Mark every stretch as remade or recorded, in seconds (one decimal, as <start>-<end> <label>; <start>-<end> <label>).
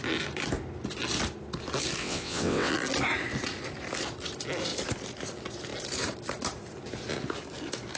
0.0-2.0 recorded; 2.0-2.7 remade; 2.7-8.0 recorded